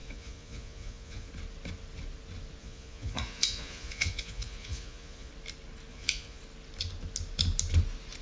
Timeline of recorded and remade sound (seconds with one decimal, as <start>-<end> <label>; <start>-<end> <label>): 0.0-1.3 remade; 1.3-2.6 recorded; 2.6-5.3 remade; 5.3-5.9 recorded; 5.9-6.4 remade; 6.4-8.2 recorded